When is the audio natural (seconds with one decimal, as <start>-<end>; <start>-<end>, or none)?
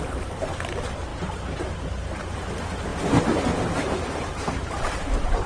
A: 0.0-5.5